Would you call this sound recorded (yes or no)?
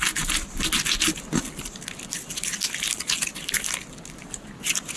yes